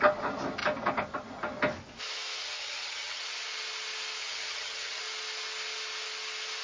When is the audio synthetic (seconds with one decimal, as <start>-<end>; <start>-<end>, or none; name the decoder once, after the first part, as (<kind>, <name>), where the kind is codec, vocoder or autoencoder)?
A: 2.4-3.2 (vocoder, HiFi-GAN); 4.2-5.0